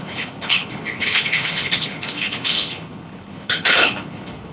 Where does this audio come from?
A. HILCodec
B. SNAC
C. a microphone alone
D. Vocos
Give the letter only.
A